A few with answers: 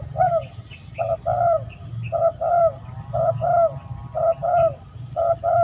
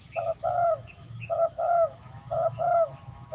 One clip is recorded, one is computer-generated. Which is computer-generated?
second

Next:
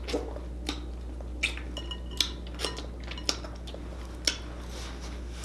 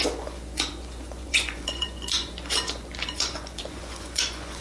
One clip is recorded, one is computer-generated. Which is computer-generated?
second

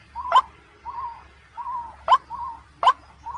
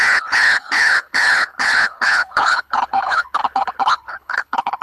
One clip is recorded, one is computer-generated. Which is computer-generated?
second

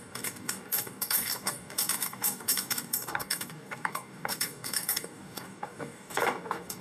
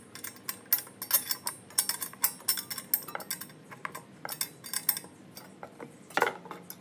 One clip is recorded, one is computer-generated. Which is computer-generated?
first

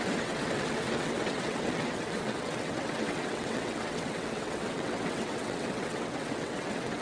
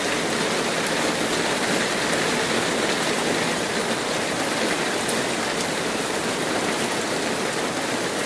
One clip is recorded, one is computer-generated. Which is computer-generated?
first